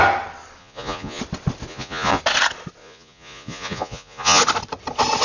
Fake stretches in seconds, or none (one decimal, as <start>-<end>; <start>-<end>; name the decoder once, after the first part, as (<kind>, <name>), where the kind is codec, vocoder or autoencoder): 0.6-1.2 (vocoder, Vocos); 1.7-2.2; 2.8-4.4